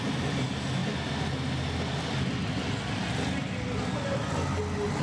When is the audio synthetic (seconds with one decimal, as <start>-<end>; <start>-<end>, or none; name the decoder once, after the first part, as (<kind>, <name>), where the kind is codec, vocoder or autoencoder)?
none